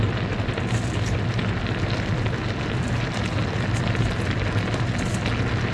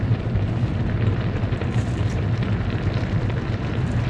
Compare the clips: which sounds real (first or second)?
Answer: first